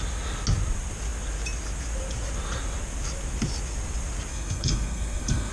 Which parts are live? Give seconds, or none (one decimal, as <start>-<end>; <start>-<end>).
0.0-4.3